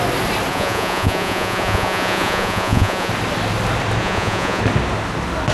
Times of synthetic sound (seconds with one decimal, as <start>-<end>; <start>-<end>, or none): 0.5-3.1; 4.0-4.6